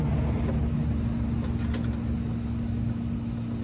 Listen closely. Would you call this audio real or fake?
real